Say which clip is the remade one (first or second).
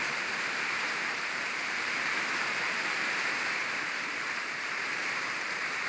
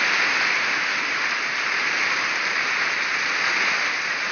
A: first